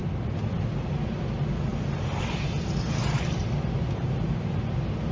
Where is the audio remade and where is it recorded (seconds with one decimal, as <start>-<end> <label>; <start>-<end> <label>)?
0.0-5.1 recorded